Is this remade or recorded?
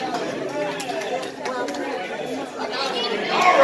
recorded